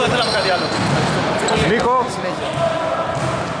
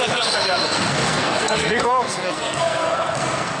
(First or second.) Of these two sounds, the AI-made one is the second